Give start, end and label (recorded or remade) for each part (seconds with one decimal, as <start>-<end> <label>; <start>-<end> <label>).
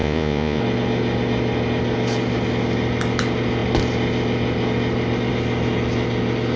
0.0-0.6 remade; 0.6-6.6 recorded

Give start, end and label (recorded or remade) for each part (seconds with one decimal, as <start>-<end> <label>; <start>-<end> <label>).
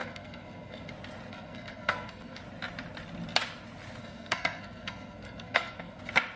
0.0-0.9 remade; 0.9-1.3 recorded; 1.3-2.4 remade; 2.4-4.0 recorded; 4.0-6.0 remade; 6.0-6.4 recorded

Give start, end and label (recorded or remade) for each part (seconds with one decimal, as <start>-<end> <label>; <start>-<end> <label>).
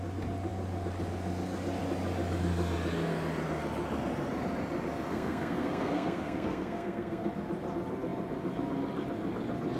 0.0-5.1 recorded; 5.1-7.3 remade; 7.3-9.8 recorded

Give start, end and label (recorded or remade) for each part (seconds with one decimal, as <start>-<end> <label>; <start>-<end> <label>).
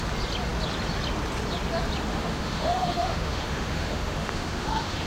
0.0-2.1 recorded; 2.1-5.1 remade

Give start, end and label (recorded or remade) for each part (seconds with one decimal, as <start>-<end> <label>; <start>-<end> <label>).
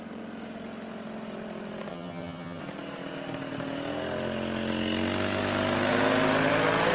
0.0-1.9 recorded; 1.9-2.6 remade; 2.6-6.9 recorded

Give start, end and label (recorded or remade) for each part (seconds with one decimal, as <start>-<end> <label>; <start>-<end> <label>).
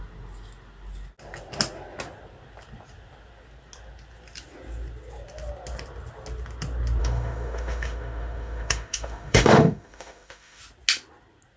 0.0-7.0 recorded; 7.0-10.6 remade; 10.6-11.6 recorded